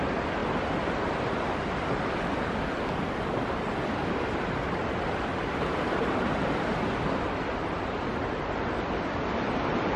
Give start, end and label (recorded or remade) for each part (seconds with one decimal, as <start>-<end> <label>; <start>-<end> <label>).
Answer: 0.0-10.0 recorded